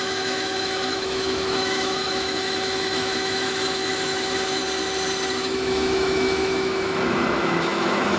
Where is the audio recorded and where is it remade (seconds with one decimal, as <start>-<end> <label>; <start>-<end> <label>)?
0.0-4.6 remade; 4.6-5.3 recorded; 5.3-8.2 remade